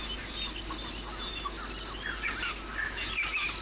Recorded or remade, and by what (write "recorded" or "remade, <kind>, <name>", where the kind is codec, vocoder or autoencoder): recorded